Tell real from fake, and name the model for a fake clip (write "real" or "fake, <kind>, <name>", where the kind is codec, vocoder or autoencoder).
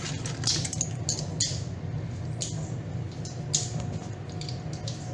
real